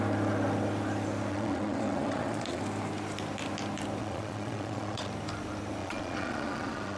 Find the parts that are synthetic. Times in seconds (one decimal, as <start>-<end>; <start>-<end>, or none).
1.3-2.6; 4.0-5.1; 5.8-7.0